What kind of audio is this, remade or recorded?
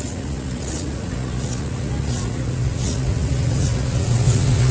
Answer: remade